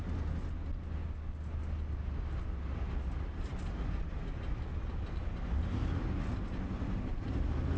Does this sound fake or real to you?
real